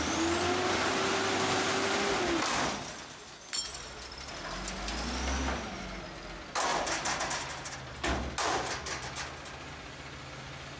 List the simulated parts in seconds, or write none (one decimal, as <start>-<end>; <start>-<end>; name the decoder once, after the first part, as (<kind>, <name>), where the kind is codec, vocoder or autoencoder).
none